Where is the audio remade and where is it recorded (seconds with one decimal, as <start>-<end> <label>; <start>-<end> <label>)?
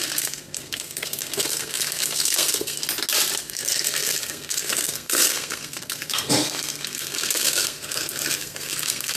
0.0-2.8 remade; 2.8-3.4 recorded; 3.4-9.2 remade